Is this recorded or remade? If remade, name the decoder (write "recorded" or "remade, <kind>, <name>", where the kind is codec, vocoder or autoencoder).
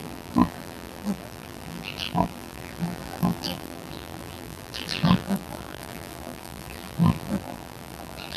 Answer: remade, vocoder, BigVGAN v2